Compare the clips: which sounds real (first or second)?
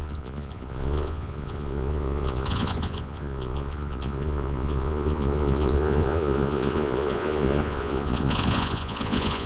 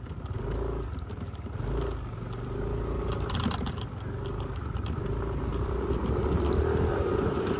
second